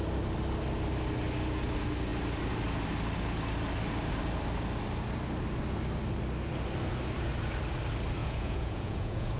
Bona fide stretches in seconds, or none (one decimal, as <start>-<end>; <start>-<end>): 0.0-8.2